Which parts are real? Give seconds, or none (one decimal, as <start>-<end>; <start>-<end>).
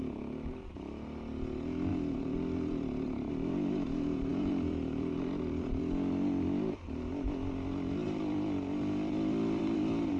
0.0-1.9; 3.3-4.3; 5.8-8.0